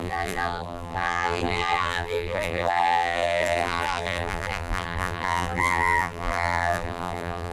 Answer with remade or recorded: remade